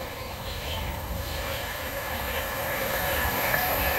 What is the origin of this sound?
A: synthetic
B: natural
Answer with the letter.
A